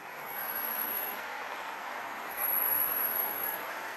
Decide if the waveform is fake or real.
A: fake